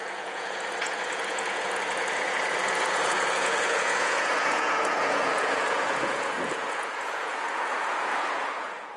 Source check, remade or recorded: remade